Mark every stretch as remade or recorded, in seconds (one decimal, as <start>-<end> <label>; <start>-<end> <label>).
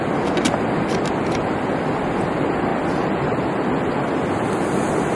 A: 0.0-5.2 recorded